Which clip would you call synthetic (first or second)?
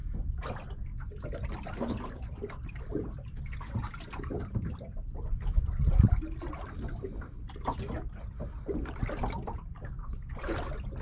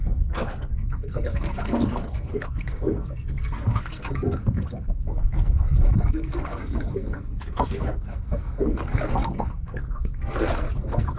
second